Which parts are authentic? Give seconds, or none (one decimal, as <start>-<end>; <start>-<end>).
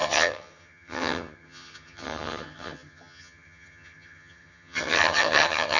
none